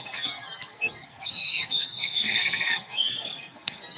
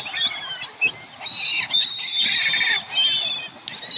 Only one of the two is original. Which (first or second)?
second